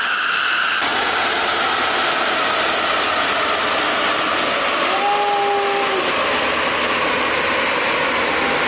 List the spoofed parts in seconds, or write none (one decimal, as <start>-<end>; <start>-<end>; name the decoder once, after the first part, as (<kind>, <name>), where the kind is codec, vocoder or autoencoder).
none